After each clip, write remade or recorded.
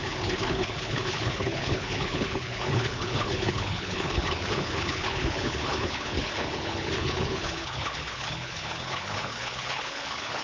remade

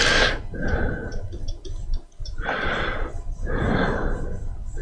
recorded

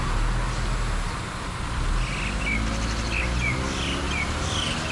recorded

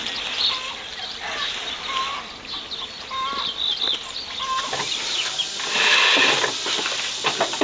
recorded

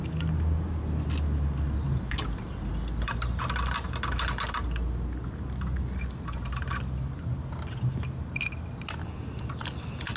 recorded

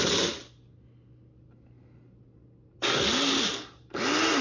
recorded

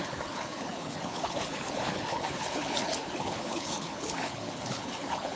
remade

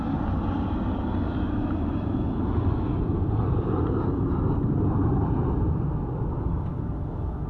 recorded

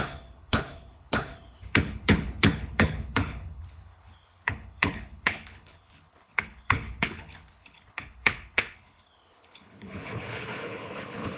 remade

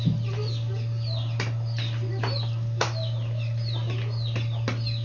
recorded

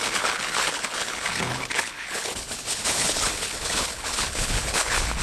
remade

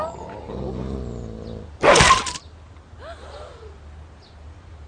recorded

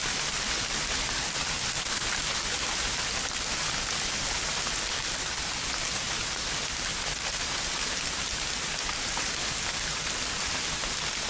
recorded